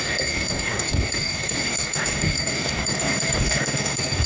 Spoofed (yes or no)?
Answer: yes